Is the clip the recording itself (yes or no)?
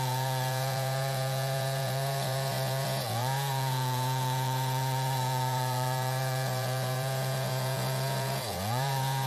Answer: no